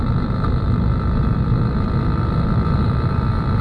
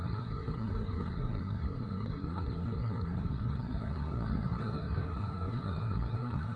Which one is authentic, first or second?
first